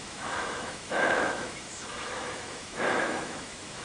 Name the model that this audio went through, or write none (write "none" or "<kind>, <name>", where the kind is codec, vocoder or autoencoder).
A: autoencoder, DAC-VAE